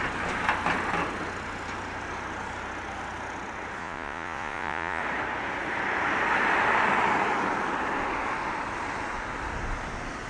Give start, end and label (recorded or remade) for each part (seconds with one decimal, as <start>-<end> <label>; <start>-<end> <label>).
0.0-3.8 recorded; 3.8-5.0 remade; 5.0-10.3 recorded